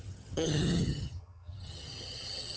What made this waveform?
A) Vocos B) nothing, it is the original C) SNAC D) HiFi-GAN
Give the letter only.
D